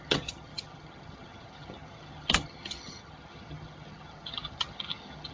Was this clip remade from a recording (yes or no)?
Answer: yes